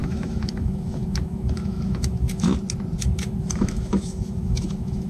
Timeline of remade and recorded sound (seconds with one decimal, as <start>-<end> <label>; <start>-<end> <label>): 0.0-2.5 remade; 2.5-3.0 recorded; 3.0-5.1 remade